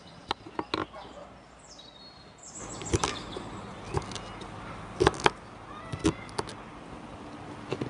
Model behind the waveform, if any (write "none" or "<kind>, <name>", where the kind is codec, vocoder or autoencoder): none